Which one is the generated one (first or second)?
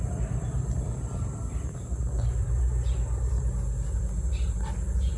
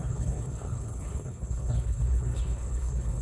second